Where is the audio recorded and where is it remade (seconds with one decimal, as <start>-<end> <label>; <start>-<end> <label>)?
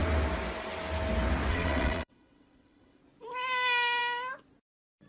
0.0-1.5 recorded; 1.5-3.0 remade; 3.0-5.1 recorded